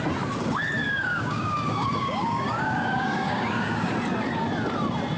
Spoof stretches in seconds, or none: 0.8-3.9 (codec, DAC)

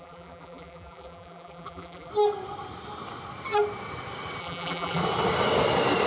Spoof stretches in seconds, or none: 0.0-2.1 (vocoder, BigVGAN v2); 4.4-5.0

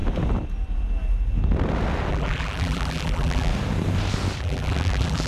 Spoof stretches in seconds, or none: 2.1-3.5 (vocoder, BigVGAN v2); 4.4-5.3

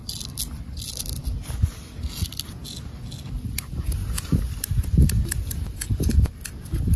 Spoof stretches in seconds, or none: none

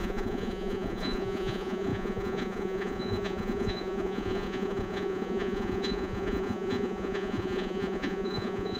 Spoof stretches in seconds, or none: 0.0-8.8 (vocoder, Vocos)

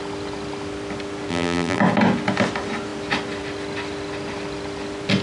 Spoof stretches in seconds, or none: 1.3-1.8 (vocoder, BigVGAN v2)